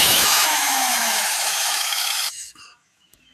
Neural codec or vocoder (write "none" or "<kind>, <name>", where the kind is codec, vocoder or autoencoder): autoencoder, DAC-VAE